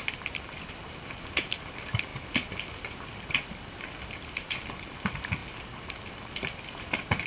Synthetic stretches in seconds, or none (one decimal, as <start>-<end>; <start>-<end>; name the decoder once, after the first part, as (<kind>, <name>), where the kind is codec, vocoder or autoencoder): 0.0-2.1 (vocoder, BigVGAN v2); 2.8-5.4; 6.0-7.3

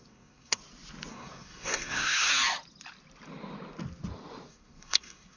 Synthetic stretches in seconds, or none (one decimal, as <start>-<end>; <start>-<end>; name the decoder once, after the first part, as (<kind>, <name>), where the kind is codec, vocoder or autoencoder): 0.0-0.6 (codec, SNAC); 1.1-2.3; 4.5-5.4

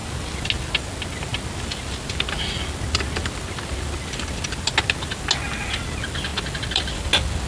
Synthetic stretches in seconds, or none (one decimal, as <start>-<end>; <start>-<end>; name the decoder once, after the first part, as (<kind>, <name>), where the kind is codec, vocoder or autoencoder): none

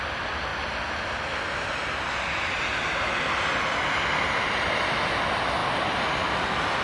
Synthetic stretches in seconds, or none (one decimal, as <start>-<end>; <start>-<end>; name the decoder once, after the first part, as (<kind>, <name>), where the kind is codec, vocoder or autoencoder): 0.0-0.5 (vocoder, BigVGAN v2); 2.0-2.7; 4.6-6.8